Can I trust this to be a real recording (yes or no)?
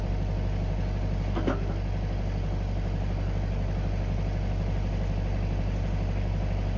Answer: yes